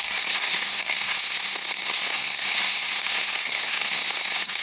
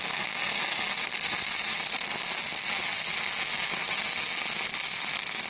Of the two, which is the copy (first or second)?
first